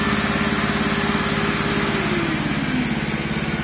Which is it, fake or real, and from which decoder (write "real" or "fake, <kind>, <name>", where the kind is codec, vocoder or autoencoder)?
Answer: real